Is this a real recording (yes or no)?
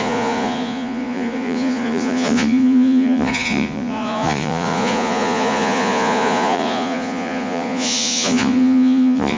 no